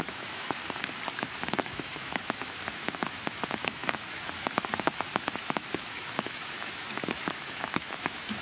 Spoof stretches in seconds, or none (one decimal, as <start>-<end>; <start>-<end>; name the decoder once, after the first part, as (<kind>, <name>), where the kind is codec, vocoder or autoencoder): 0.0-0.6 (autoencoder, DAC-VAE); 1.3-8.4